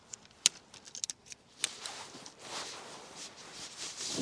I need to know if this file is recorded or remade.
recorded